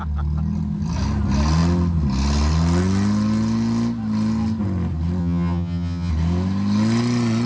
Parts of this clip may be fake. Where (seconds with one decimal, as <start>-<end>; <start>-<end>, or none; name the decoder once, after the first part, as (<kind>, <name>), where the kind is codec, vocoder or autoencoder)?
5.2-6.1 (vocoder, HiFi-GAN)